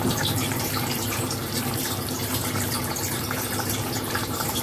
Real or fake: fake